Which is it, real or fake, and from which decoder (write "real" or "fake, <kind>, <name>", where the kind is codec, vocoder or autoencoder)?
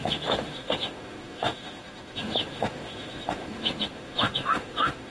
fake, autoencoder, DAC-VAE